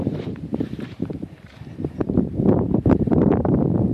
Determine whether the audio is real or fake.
fake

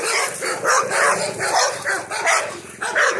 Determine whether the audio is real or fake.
real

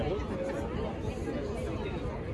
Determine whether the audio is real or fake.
real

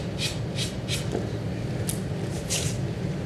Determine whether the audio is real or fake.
real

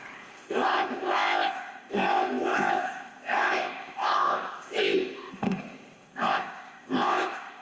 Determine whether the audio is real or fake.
fake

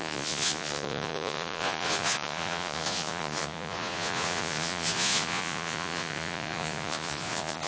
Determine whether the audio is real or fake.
fake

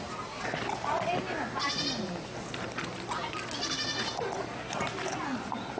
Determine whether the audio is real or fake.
real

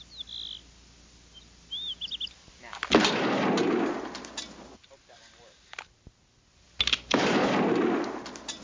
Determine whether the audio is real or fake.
real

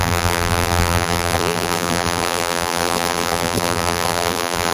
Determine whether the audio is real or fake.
fake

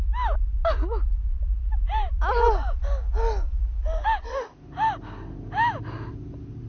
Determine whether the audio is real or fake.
real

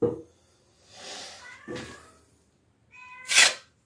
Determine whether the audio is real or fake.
real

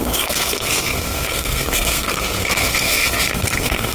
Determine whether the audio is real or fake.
fake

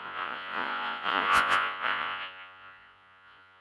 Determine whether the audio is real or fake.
fake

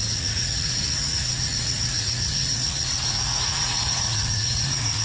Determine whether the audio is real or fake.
fake